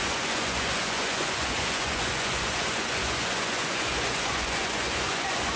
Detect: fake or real fake